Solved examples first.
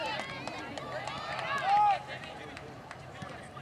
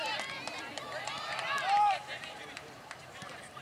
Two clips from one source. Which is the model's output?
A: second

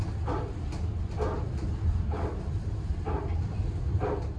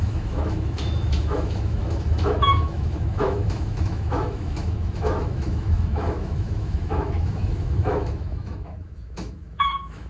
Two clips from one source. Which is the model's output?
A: second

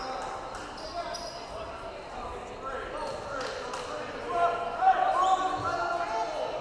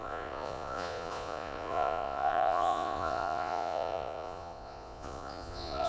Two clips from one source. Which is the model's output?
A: second